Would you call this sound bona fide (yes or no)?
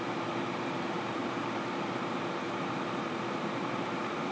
no